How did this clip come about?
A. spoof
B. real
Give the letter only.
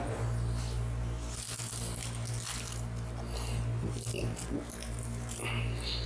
B